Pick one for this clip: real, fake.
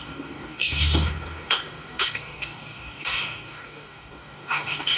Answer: fake